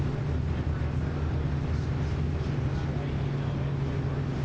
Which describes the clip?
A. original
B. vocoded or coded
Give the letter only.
A